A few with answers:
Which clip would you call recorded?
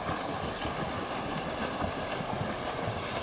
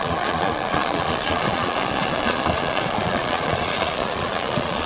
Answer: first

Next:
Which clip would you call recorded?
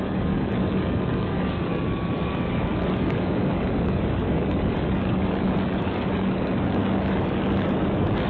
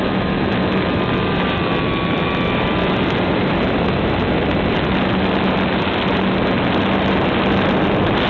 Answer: second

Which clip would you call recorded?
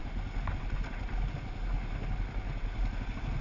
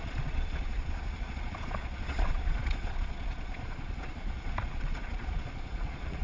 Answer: first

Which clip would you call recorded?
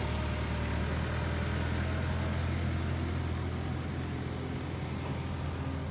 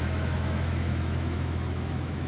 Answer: first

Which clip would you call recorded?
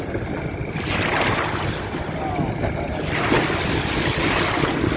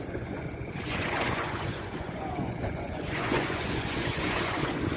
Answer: first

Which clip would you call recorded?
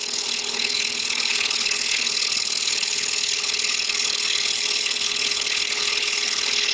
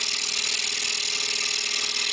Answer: second